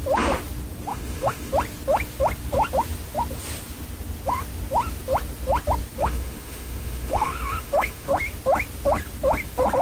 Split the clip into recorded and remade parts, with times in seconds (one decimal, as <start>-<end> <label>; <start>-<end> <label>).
0.0-0.9 recorded; 0.9-1.5 remade; 1.5-6.0 recorded; 6.0-8.1 remade; 8.1-9.8 recorded